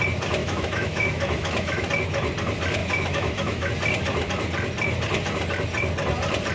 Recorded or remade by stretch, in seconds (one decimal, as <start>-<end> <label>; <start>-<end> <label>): 0.0-0.4 recorded; 0.4-1.9 remade; 1.9-2.8 recorded; 2.8-3.7 remade; 3.7-6.5 recorded